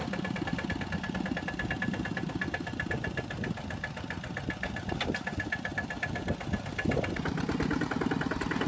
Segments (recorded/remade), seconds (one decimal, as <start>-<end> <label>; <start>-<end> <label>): 0.0-8.7 recorded

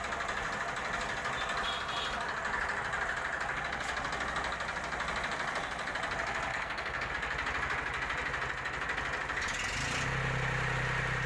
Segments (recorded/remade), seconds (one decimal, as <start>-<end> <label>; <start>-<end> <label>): 0.0-6.5 recorded; 6.5-7.1 remade; 7.1-11.3 recorded

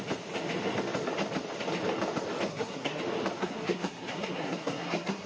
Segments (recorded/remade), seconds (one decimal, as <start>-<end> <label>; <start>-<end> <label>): 0.0-2.5 recorded; 2.5-3.0 remade; 3.0-3.4 recorded; 3.4-5.3 remade